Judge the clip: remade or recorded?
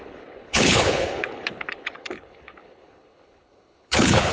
remade